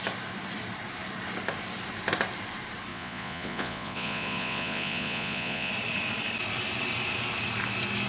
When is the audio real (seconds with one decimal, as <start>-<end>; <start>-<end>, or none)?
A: 0.0-2.9; 5.7-8.1